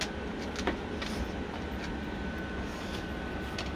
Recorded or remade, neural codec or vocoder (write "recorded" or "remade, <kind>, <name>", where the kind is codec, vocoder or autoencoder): recorded